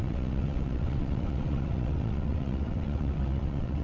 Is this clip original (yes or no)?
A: no